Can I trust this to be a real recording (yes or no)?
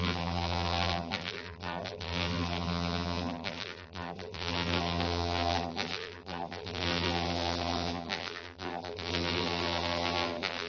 no